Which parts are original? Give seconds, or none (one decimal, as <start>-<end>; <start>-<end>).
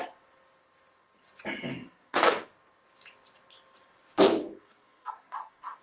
0.0-1.7; 2.5-4.4